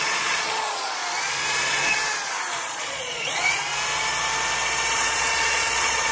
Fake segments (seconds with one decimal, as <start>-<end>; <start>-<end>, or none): 0.0-1.0; 2.6-3.6; 4.9-6.1